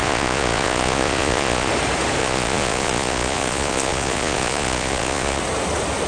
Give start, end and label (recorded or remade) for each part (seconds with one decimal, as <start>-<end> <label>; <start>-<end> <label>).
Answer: 0.0-1.7 remade; 1.7-2.2 recorded; 2.2-5.4 remade; 5.4-6.1 recorded